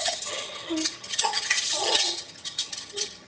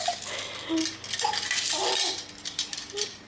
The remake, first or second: first